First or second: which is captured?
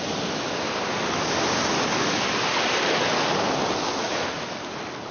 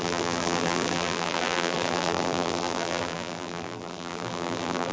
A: first